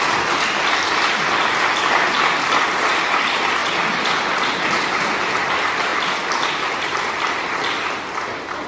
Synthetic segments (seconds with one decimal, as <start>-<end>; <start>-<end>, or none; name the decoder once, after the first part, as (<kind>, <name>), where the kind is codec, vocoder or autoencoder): none